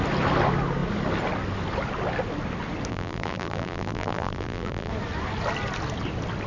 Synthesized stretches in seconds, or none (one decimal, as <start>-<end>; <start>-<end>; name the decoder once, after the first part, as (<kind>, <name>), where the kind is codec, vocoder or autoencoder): 2.9-4.9 (vocoder, BigVGAN v2)